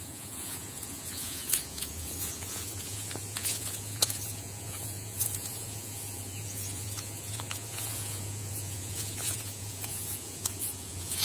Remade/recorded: remade